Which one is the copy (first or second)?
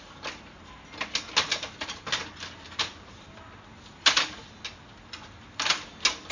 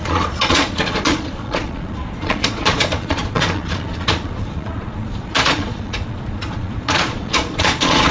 second